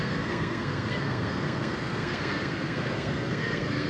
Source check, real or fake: fake